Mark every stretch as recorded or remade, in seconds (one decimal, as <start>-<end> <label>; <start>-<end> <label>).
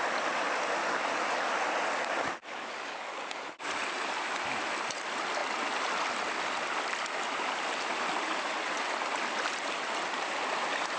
0.0-0.8 recorded; 0.8-1.5 remade; 1.5-2.4 recorded; 2.4-3.7 remade; 3.7-11.0 recorded